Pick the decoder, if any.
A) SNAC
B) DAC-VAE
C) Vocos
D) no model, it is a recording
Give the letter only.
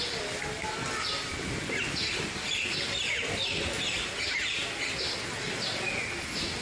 D